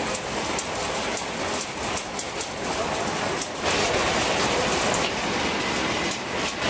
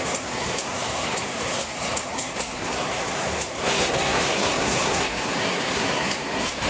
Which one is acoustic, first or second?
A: first